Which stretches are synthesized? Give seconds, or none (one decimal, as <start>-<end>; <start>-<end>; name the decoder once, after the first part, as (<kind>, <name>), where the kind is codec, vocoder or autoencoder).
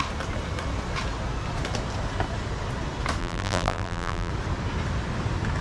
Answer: 3.2-4.3 (vocoder, BigVGAN v2)